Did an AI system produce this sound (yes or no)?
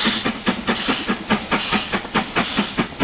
no